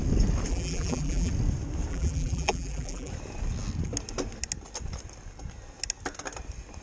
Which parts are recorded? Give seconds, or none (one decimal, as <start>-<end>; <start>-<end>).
0.0-0.5; 1.3-1.9; 3.1-6.8